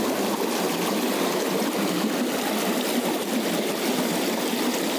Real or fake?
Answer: real